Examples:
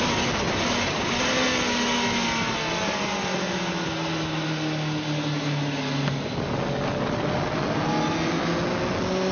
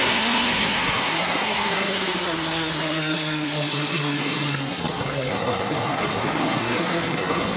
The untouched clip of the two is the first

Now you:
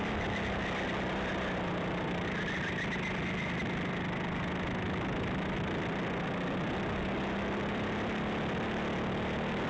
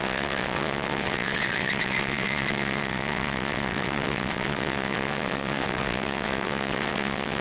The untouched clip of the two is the first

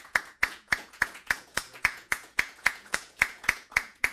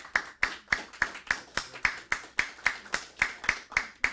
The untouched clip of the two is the second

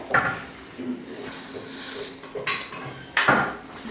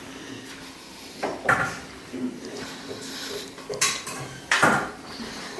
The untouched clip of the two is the first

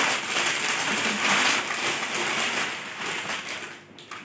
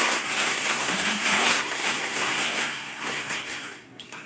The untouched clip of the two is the first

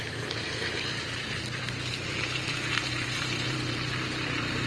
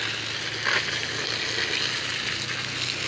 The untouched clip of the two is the second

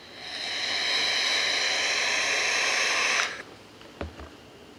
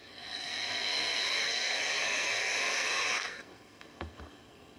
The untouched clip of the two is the first